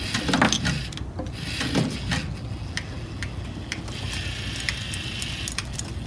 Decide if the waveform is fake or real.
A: real